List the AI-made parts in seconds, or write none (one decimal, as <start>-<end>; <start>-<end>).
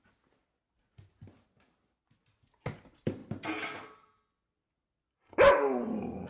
none